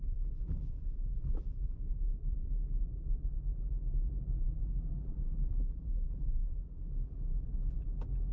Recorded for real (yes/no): no